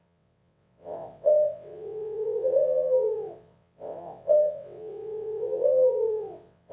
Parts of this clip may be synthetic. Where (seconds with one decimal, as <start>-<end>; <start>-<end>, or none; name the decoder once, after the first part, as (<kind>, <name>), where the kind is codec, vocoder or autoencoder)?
0.0-6.7 (vocoder, WaveNeXt)

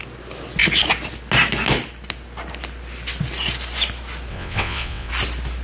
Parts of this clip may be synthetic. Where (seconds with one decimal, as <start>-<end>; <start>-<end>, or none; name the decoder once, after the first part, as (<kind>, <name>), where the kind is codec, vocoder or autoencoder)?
4.3-5.1 (vocoder, WaveNeXt)

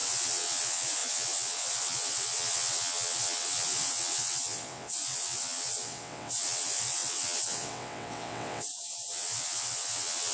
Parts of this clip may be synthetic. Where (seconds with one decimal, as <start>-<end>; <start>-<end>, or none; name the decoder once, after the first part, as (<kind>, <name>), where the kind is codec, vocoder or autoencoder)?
0.0-10.3 (vocoder, WaveNeXt)

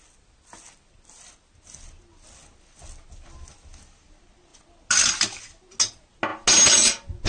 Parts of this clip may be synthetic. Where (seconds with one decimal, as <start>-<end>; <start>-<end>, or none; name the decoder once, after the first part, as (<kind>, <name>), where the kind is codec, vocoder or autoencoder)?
none

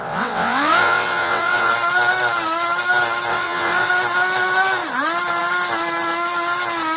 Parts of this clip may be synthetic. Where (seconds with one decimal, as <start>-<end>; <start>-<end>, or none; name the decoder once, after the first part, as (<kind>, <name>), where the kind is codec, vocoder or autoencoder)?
0.0-1.7 (vocoder, WaveNeXt); 3.3-3.9

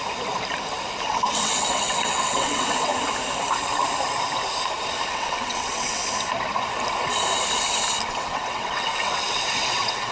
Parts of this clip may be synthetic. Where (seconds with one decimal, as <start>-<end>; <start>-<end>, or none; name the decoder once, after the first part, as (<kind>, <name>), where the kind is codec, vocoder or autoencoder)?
1.1-2.9 (vocoder, WaveNeXt); 5.1-6.0; 8.1-10.1

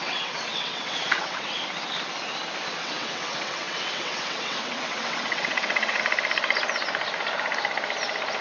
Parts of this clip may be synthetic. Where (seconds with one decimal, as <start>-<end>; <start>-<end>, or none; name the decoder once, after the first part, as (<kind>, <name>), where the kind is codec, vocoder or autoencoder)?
0.0-1.5 (vocoder, WaveNeXt); 2.8-6.0

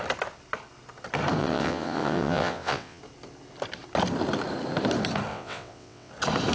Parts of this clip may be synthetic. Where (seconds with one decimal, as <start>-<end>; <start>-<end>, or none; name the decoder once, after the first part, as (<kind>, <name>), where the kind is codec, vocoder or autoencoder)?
1.4-3.0 (vocoder, WaveNeXt); 5.3-6.1